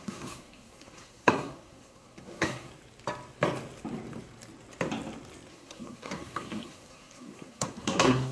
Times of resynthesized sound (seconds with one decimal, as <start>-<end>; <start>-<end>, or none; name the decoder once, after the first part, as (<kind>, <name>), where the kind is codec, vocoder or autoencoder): 0.0-2.7 (codec, SNAC); 5.5-8.3